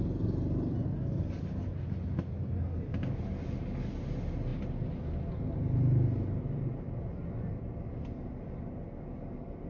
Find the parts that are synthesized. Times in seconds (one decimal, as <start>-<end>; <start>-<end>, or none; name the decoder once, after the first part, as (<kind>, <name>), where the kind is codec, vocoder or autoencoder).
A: none